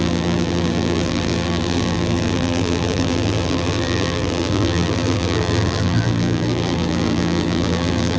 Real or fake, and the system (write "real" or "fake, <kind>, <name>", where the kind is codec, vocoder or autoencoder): fake, vocoder, BigVGAN v2